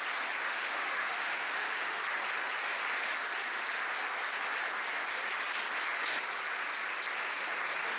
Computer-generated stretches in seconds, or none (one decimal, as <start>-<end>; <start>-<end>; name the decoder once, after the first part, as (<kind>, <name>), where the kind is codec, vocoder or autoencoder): 0.4-2.0 (autoencoder, DAC-VAE)